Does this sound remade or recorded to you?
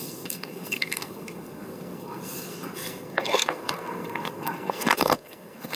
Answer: remade